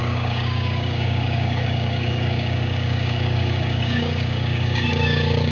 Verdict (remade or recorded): remade